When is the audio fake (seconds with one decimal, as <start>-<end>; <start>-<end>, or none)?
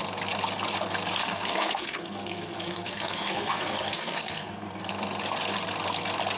1.2-4.9